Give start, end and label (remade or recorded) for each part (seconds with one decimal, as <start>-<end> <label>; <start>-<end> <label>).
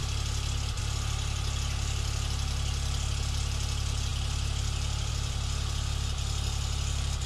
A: 0.0-0.8 recorded; 0.8-7.3 remade